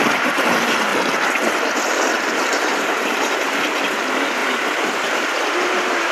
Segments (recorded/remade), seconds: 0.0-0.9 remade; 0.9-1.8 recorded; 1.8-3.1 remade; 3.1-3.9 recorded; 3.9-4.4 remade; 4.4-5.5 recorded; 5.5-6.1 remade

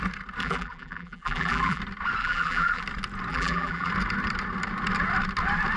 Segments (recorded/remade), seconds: 0.0-0.4 recorded; 0.4-1.8 remade; 1.8-2.2 recorded; 2.2-2.8 remade; 2.8-3.3 recorded; 3.3-3.9 remade; 3.9-5.8 recorded

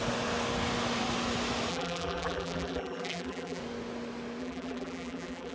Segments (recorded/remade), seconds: 0.0-1.7 recorded; 1.7-3.6 remade; 3.6-4.4 recorded; 4.4-5.5 remade

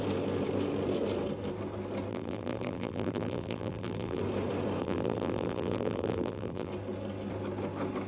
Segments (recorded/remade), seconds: 0.0-2.1 recorded; 2.1-4.2 remade; 4.2-4.8 recorded; 4.8-6.7 remade; 6.7-8.1 recorded

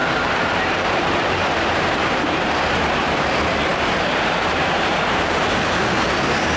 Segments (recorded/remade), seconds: 0.0-2.5 remade; 2.5-3.7 recorded; 3.7-5.4 remade; 5.4-6.6 recorded